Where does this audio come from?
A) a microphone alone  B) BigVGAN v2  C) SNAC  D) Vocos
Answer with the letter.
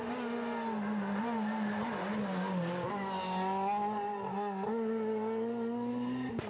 A